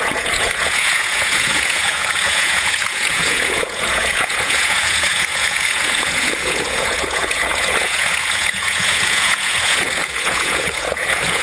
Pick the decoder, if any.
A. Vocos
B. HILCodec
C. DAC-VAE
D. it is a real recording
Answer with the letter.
A